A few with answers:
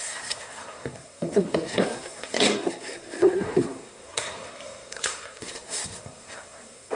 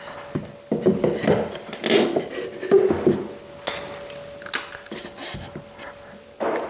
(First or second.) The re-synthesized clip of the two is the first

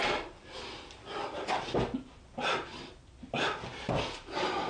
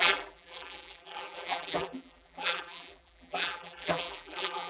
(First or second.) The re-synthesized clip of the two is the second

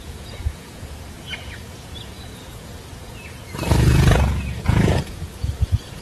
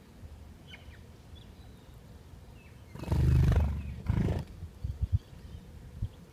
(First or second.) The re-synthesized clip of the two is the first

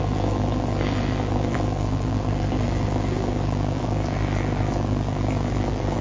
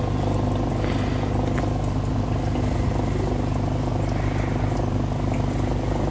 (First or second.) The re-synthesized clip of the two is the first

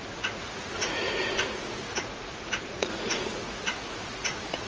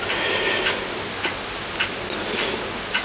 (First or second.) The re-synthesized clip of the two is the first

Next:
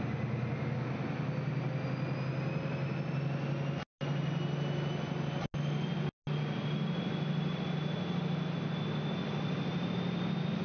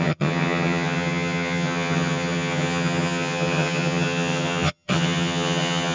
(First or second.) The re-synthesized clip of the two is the second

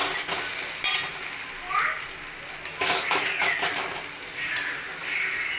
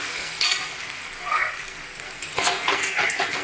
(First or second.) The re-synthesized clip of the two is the second